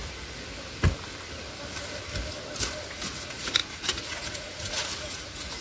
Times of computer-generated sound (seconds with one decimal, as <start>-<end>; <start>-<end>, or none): 2.8-5.6